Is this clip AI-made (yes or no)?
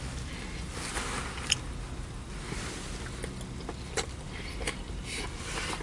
no